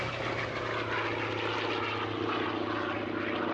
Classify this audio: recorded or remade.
recorded